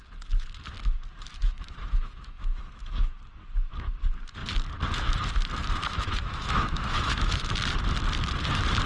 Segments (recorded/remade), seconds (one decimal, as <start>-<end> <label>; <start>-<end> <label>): 0.0-1.3 recorded; 1.3-3.2 remade; 3.2-5.8 recorded; 5.8-7.5 remade; 7.5-8.9 recorded